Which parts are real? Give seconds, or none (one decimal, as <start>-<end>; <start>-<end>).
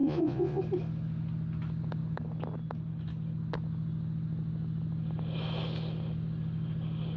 0.6-7.2